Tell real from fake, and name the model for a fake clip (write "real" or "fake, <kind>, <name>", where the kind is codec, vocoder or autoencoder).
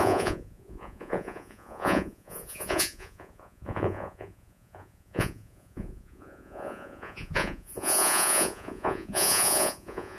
fake, vocoder, Vocos